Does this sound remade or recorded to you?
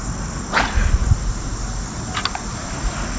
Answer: recorded